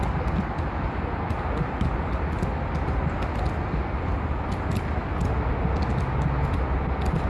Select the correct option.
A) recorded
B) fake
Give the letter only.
A